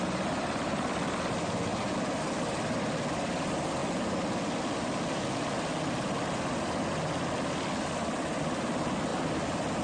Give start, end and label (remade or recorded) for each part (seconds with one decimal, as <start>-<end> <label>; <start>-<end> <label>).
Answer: 0.0-1.7 remade; 1.7-2.4 recorded; 2.4-3.8 remade; 3.8-8.4 recorded; 8.4-9.8 remade